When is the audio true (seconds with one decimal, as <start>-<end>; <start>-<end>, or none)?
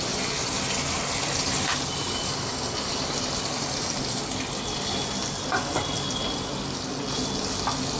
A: 0.0-1.7; 2.9-8.0